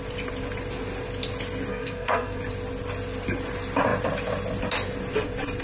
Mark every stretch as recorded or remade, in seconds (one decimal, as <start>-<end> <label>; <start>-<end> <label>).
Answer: 0.0-1.7 recorded; 1.7-2.4 remade; 2.4-5.6 recorded